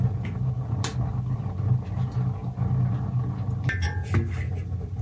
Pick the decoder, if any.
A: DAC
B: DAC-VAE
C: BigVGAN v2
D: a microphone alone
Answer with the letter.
D